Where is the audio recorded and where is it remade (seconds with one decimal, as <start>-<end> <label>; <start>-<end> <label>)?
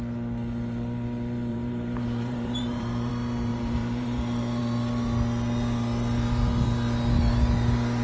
0.0-1.5 recorded; 1.5-3.1 remade; 3.1-3.5 recorded; 3.5-4.6 remade; 4.6-8.0 recorded